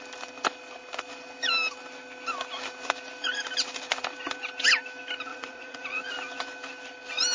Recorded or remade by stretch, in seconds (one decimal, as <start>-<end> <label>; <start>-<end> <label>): 0.0-5.3 recorded; 5.3-6.0 remade; 6.0-7.3 recorded